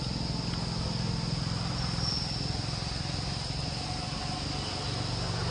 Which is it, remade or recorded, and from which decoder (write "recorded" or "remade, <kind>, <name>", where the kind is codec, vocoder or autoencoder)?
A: recorded